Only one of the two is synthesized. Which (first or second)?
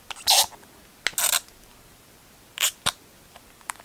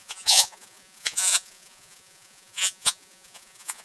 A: second